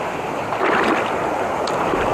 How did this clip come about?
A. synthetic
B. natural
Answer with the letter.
B